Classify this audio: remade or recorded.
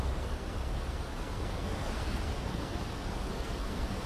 remade